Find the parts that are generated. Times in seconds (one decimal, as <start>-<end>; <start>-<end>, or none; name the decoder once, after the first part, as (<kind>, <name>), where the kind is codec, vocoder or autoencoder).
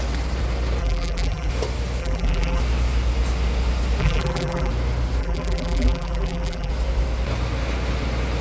0.8-1.5 (vocoder, BigVGAN v2); 2.0-2.6; 4.0-4.7; 5.2-6.7